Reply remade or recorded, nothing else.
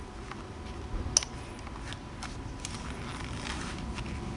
recorded